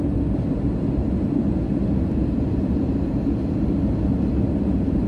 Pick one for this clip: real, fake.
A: fake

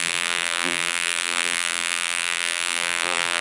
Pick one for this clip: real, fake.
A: fake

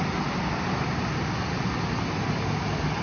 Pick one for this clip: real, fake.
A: real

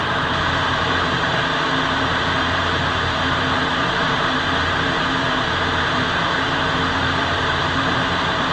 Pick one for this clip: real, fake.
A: fake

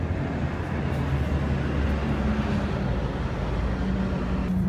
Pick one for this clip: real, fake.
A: real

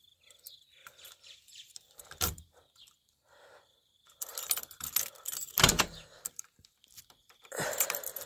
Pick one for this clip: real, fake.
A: fake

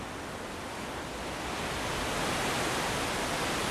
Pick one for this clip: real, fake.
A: real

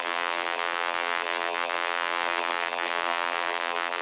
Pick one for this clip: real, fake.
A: fake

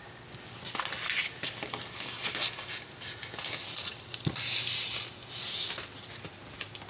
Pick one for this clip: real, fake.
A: real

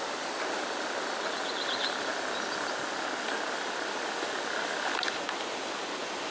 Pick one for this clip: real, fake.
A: real